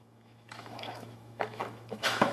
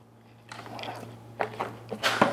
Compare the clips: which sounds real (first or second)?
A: second